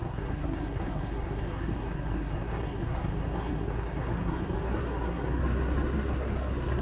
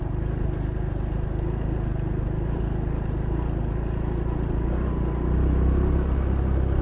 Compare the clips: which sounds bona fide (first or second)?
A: second